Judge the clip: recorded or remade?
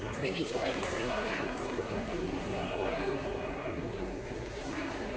remade